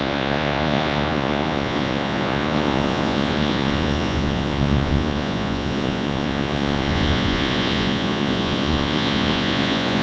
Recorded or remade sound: remade